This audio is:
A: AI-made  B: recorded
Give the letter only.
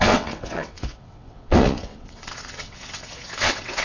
A